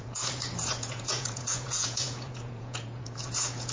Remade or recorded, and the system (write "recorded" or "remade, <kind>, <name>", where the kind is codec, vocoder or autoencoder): remade, vocoder, Vocos